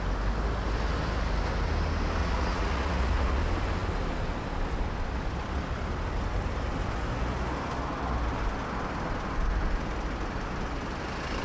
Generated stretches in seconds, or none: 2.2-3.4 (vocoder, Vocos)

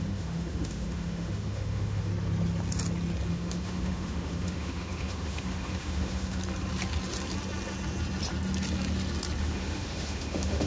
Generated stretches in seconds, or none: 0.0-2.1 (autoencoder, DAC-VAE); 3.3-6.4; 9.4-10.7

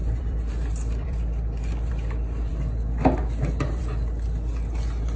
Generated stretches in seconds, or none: 0.0-1.9 (vocoder, BigVGAN v2)